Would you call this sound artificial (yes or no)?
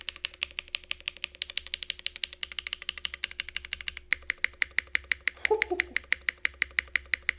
no